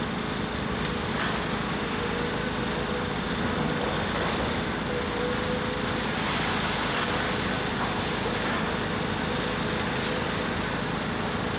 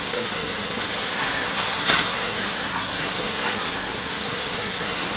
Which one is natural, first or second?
first